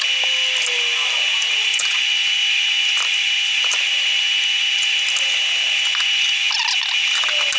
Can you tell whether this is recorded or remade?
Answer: recorded